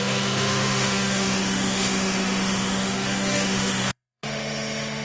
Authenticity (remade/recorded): remade